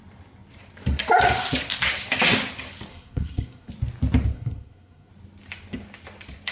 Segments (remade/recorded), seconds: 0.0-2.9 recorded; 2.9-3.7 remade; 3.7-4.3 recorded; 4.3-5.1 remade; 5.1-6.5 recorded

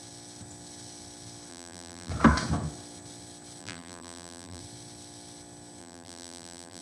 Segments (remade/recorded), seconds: 0.0-1.5 recorded; 1.5-2.1 remade; 2.1-3.6 recorded; 3.6-4.6 remade; 4.6-5.8 recorded; 5.8-6.8 remade

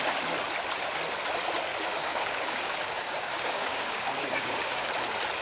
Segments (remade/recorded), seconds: 0.0-1.7 recorded; 1.7-4.9 remade; 4.9-5.4 recorded

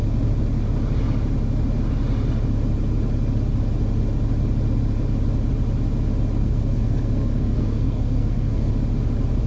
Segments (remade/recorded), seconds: 0.0-6.4 recorded; 6.4-8.7 remade; 8.7-9.5 recorded

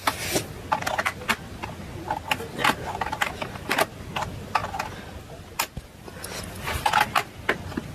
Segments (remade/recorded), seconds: 0.0-2.6 recorded; 2.6-3.8 remade; 3.8-7.9 recorded

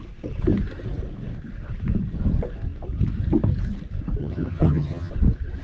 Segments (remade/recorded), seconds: 0.0-4.2 recorded; 4.2-5.1 remade; 5.1-5.6 recorded